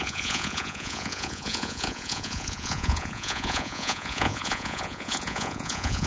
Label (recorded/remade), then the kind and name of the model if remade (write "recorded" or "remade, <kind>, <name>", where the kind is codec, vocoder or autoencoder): remade, vocoder, Vocos